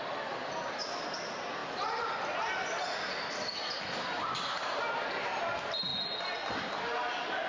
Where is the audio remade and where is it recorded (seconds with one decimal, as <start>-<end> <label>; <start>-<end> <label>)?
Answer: 0.0-7.5 recorded